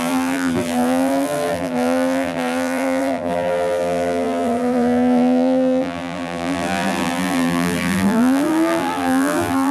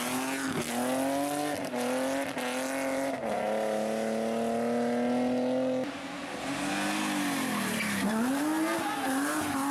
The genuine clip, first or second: second